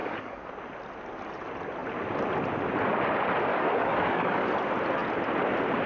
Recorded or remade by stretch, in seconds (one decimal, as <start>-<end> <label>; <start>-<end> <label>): 0.0-0.5 remade; 0.5-3.5 recorded; 3.5-4.5 remade; 4.5-5.9 recorded